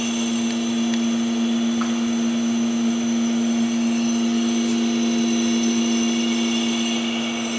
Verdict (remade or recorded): recorded